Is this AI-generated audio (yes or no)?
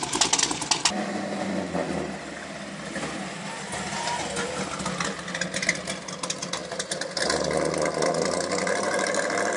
no